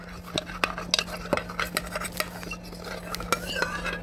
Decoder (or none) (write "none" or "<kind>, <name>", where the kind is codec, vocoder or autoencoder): none